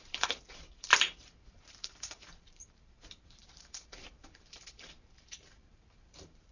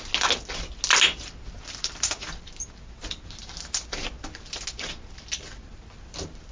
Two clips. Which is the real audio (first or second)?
second